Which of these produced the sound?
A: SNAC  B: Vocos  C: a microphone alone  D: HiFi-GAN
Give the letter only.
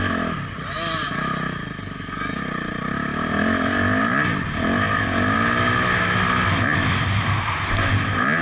C